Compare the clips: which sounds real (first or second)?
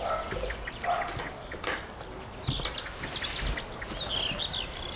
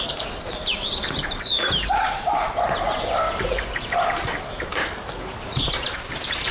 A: first